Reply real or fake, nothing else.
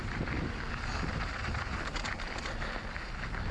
real